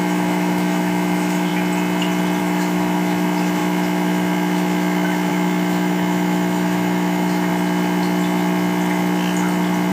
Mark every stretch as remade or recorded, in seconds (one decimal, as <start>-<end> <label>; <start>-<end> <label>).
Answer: 0.0-1.5 remade; 1.5-2.4 recorded; 2.4-7.5 remade; 7.5-9.9 recorded